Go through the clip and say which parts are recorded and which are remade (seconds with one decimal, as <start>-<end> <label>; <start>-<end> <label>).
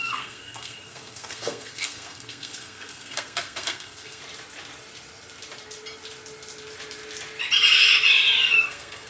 0.0-4.2 remade; 4.2-8.4 recorded; 8.4-9.1 remade